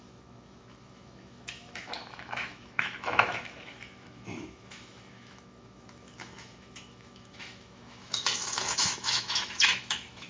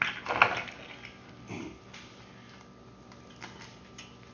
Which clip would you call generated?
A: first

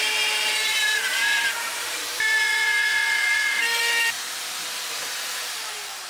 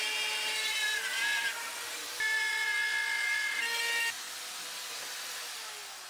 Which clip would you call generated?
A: first